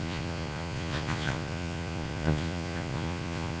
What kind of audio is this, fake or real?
fake